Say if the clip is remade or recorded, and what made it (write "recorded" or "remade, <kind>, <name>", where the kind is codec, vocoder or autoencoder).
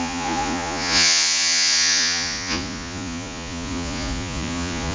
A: remade, vocoder, Vocos